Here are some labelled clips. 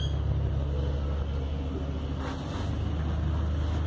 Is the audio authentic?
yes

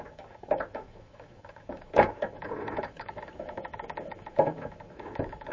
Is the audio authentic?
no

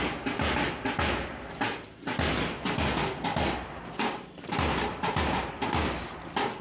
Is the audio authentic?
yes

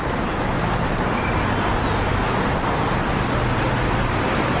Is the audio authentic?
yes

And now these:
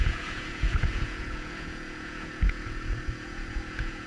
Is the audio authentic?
no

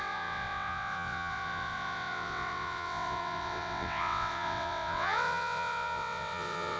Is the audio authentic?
no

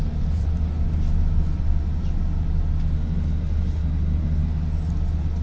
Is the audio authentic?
yes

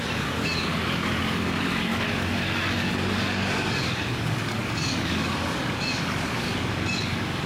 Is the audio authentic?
no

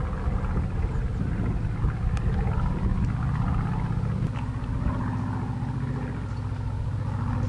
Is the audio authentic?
yes